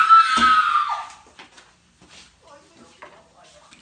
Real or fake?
real